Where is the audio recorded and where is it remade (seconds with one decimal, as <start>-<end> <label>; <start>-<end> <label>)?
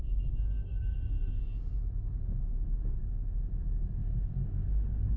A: 0.0-0.8 recorded; 0.8-3.1 remade; 3.1-4.0 recorded; 4.0-4.6 remade; 4.6-5.2 recorded